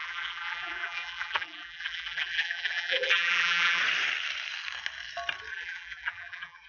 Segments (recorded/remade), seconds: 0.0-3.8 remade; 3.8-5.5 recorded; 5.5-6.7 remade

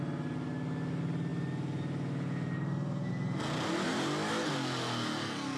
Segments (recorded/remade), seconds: 0.0-5.6 recorded

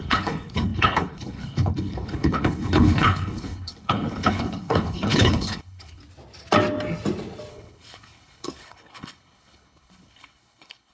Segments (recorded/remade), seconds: 0.0-6.0 remade; 6.0-7.5 recorded; 7.5-10.9 remade

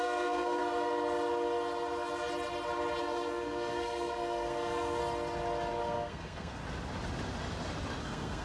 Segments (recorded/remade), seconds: 0.0-0.6 remade; 0.6-3.0 recorded; 3.0-5.0 remade; 5.0-5.8 recorded; 5.8-6.6 remade; 6.6-8.0 recorded; 8.0-8.4 remade